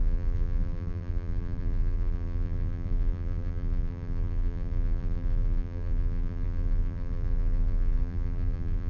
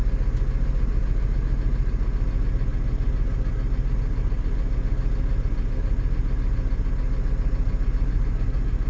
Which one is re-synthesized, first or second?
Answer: first